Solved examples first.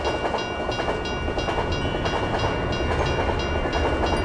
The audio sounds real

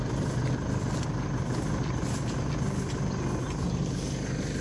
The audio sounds real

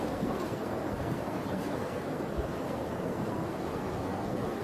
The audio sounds fake